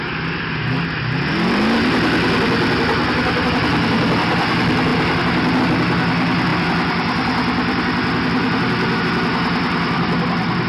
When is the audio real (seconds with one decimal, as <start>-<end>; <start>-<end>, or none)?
0.0-10.7